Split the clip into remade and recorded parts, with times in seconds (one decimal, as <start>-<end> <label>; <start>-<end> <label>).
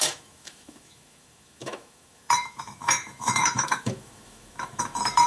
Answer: 0.0-5.3 remade